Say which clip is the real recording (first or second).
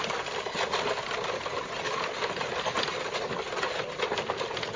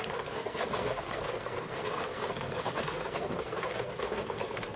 first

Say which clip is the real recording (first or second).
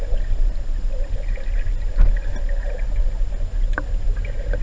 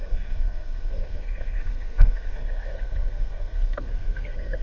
first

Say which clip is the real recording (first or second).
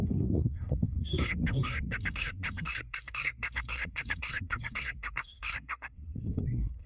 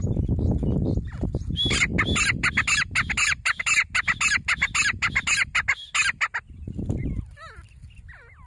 second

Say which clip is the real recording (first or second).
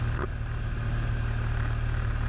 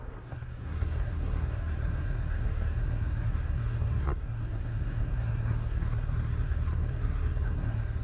first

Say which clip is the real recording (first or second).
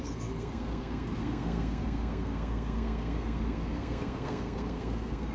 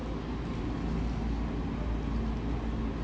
second